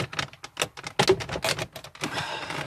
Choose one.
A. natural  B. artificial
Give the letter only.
A